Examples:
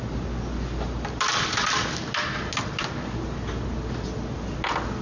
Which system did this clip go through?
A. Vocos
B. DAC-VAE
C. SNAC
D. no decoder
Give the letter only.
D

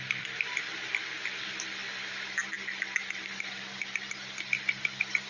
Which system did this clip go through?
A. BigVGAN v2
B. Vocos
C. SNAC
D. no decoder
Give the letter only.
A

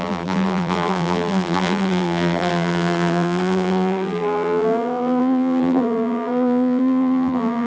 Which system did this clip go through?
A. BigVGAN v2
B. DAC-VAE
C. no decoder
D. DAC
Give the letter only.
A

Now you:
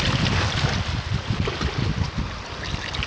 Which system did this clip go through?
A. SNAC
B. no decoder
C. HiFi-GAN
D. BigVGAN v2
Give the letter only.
B